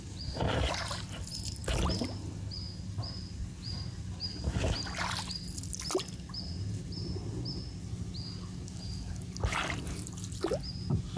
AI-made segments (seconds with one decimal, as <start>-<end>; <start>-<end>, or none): none